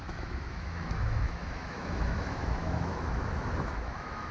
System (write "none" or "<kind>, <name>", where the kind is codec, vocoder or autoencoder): autoencoder, DAC-VAE